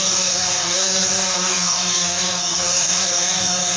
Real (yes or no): no